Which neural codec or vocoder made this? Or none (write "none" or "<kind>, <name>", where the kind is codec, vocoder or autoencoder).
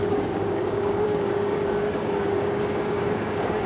codec, DAC